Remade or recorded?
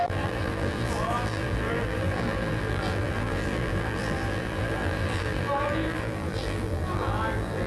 remade